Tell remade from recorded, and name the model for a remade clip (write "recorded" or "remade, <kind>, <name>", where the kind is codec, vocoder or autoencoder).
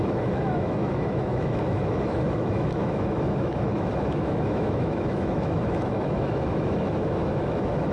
remade, autoencoder, DAC-VAE